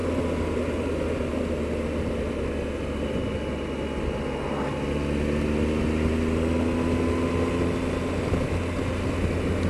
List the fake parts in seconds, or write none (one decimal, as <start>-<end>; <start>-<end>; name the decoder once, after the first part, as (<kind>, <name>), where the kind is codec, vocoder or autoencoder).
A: none

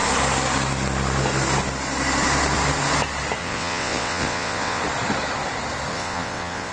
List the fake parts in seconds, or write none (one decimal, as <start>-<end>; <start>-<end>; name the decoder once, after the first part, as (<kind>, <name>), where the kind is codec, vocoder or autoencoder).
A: 3.4-4.8 (vocoder, WaveNeXt); 5.9-6.7

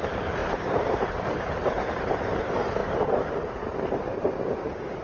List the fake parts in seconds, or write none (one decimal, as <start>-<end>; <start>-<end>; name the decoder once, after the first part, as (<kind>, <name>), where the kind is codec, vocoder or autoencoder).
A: 0.0-2.8 (vocoder, BigVGAN v2)

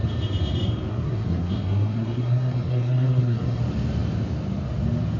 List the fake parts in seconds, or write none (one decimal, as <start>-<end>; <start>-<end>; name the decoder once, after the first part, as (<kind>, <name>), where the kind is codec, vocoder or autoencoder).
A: 0.9-3.6 (codec, SNAC)

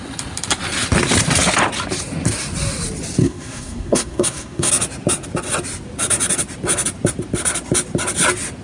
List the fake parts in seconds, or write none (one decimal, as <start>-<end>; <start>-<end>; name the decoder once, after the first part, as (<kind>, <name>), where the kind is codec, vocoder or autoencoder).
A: 3.2-4.7 (codec, SNAC)